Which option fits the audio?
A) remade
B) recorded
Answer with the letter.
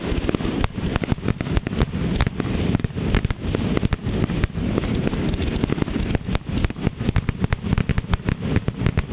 B